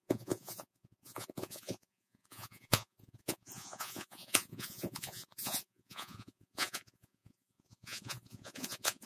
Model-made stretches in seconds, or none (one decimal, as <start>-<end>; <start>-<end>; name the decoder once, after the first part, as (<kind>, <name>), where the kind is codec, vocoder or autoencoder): 0.0-9.1 (vocoder, Vocos)